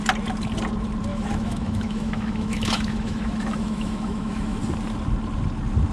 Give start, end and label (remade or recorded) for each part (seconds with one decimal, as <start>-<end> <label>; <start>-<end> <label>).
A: 0.0-1.1 recorded; 1.1-4.6 remade; 4.6-5.9 recorded